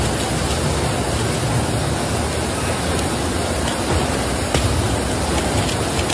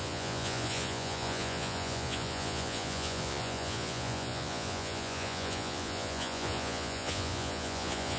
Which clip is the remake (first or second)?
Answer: second